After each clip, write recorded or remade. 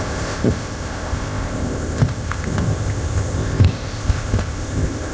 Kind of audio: remade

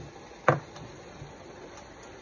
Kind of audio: recorded